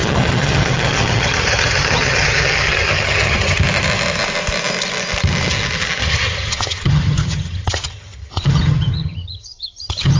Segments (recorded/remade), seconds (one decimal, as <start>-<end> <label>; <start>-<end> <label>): 0.0-3.6 remade; 3.6-6.0 recorded; 6.0-10.2 remade